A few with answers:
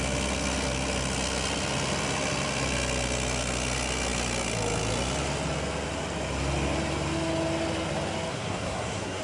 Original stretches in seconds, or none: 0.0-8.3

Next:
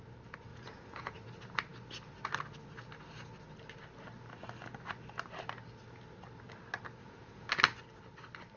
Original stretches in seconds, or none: 0.0-0.5; 1.2-7.0; 7.5-8.6